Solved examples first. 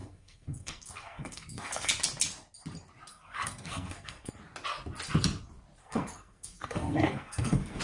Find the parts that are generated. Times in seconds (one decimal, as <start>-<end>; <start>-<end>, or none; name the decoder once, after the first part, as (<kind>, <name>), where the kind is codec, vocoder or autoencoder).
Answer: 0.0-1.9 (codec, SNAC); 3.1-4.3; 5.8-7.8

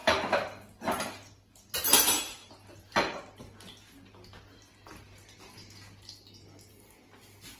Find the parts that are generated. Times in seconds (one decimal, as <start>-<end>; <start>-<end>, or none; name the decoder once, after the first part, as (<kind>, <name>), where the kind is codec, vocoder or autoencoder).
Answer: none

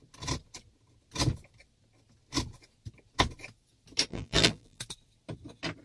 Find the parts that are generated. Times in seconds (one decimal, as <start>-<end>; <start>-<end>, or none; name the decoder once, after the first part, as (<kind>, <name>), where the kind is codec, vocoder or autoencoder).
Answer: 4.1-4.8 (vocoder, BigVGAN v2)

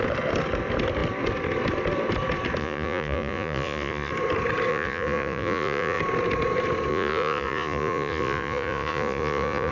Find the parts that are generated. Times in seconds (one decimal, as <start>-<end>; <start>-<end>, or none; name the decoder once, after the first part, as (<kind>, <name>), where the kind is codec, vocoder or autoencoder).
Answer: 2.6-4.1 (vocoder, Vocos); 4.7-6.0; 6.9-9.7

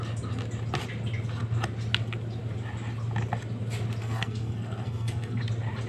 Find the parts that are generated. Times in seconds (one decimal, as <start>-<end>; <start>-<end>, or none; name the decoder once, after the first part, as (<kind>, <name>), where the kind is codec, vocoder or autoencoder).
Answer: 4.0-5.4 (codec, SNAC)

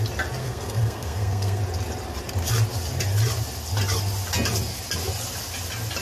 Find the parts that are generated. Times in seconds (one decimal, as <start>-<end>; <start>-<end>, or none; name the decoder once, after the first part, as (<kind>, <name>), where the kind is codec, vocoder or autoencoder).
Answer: 0.4-1.6 (codec, SNAC)

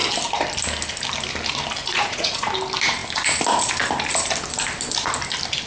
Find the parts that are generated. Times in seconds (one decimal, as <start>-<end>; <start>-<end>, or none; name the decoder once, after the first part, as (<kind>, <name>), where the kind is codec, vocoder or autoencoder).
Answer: 1.8-2.5 (vocoder, Vocos)

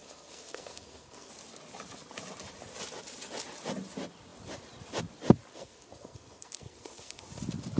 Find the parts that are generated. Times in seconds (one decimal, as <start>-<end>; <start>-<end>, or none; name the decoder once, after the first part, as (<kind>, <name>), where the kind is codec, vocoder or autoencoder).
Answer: 0.0-1.3 (codec, SNAC); 5.5-7.2